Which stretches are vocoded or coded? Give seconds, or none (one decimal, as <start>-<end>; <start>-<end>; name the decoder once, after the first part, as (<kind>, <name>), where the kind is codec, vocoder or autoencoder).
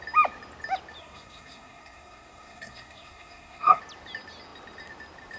1.0-3.8 (codec, SNAC)